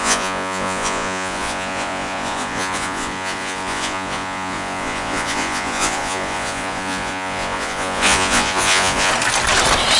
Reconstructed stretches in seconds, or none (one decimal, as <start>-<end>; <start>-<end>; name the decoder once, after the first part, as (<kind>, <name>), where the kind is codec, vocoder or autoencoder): 0.0-9.1 (vocoder, Vocos)